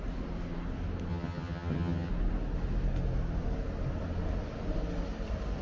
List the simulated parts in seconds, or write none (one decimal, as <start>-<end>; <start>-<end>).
1.1-2.1